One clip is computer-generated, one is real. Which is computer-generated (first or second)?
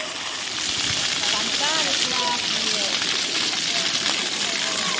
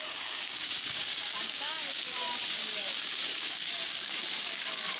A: second